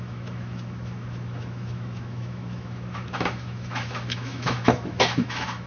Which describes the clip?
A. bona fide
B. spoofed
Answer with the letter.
B